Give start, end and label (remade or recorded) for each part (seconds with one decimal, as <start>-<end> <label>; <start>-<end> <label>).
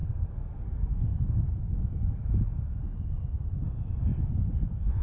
0.0-1.9 remade; 1.9-5.0 recorded